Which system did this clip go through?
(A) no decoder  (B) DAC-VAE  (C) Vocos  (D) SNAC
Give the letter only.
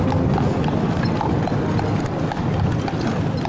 A